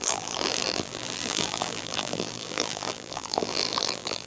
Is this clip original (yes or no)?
no